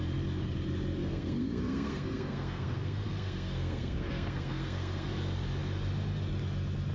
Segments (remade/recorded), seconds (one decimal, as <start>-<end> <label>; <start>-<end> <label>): 0.0-1.0 recorded; 1.0-5.1 remade; 5.1-6.9 recorded